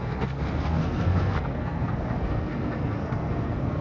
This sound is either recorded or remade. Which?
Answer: remade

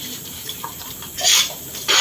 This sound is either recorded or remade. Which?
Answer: remade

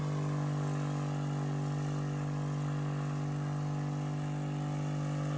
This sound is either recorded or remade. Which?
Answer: recorded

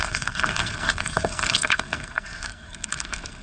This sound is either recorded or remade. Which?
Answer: remade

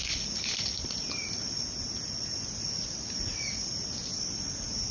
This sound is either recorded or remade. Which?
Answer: recorded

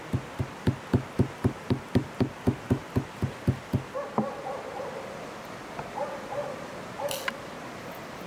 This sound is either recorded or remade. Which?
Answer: recorded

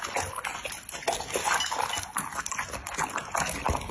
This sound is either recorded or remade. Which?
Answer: recorded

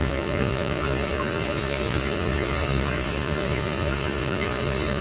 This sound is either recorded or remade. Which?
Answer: remade